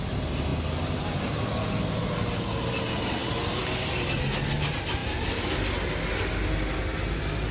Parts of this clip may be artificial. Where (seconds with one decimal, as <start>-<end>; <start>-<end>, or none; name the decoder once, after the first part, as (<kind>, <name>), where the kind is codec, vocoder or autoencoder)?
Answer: none